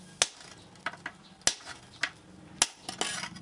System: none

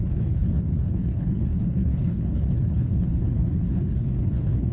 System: codec, HILCodec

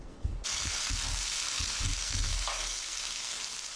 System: codec, SNAC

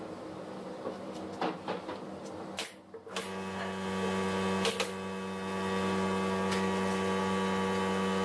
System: none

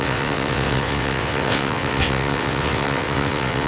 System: vocoder, WaveNeXt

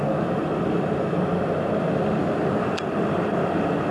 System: none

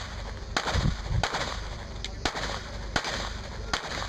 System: none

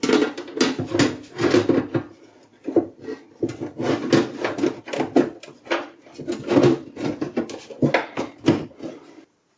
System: none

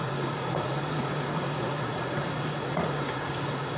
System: vocoder, Vocos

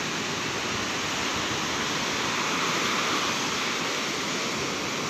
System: none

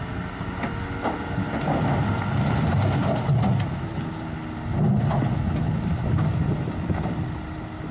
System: none